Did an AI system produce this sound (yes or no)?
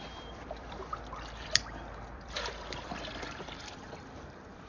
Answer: yes